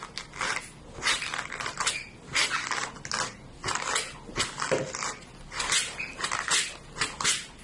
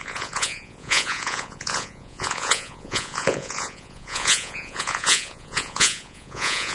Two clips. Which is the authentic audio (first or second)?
first